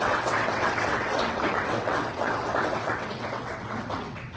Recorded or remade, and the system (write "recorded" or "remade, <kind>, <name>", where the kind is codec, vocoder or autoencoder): remade, vocoder, WaveNeXt